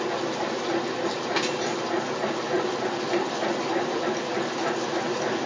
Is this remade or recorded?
recorded